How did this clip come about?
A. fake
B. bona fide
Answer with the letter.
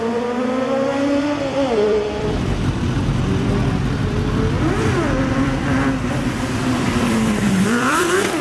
A